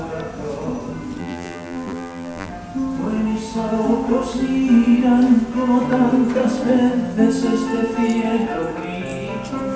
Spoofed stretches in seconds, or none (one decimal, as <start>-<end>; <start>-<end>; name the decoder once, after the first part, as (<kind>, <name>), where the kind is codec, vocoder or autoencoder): 1.2-2.5 (vocoder, BigVGAN v2)